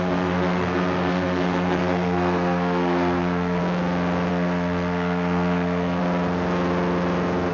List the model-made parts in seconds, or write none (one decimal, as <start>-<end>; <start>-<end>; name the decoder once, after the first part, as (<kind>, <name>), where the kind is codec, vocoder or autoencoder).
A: 0.0-3.6 (codec, SNAC); 4.3-6.0